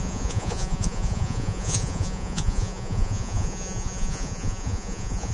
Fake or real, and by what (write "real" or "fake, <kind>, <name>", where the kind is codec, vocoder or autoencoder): fake, vocoder, Vocos